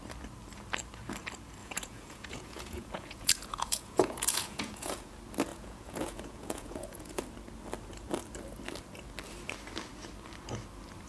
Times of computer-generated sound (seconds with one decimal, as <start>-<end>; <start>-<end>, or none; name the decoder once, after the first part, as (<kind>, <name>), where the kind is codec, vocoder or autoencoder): 1.6-5.1 (vocoder, Vocos); 5.5-7.2